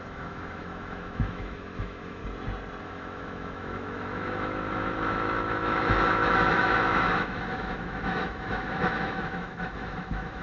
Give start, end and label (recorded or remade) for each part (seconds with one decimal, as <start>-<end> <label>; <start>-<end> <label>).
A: 0.0-2.2 remade; 2.2-2.8 recorded; 2.8-10.4 remade